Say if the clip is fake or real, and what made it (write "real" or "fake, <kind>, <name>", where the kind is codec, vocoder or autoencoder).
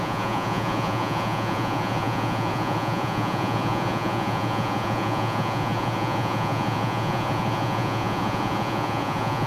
fake, vocoder, Vocos